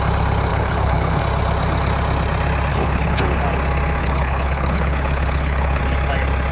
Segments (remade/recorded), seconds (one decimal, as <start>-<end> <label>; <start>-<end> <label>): 0.0-0.5 recorded; 0.5-1.2 remade; 1.2-2.7 recorded; 2.7-3.4 remade; 3.4-4.0 recorded; 4.0-5.8 remade; 5.8-6.5 recorded